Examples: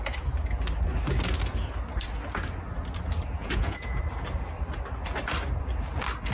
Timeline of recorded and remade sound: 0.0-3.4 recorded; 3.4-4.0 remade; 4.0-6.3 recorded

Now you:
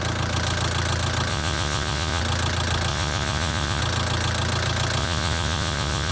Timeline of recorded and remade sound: 0.0-1.3 recorded; 1.3-2.2 remade; 2.2-2.9 recorded; 2.9-3.8 remade; 3.8-5.0 recorded; 5.0-6.1 remade

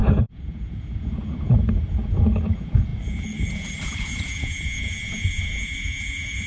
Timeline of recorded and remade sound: 0.0-2.9 remade; 2.9-3.5 recorded; 3.5-6.5 remade

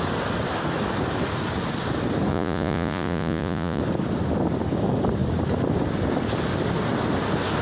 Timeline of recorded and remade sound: 0.0-2.3 recorded; 2.3-3.8 remade; 3.8-7.6 recorded